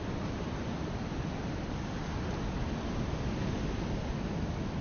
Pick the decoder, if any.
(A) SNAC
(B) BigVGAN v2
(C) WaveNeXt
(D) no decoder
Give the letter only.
D